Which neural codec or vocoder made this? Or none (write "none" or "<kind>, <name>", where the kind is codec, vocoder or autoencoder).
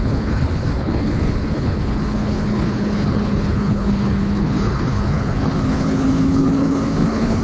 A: codec, HILCodec